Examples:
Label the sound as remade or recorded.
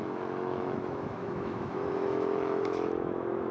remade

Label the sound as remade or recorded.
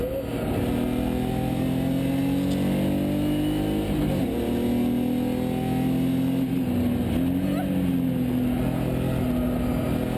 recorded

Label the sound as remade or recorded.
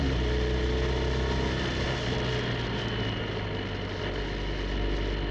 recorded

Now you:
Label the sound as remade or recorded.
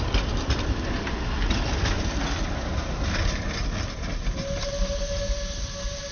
recorded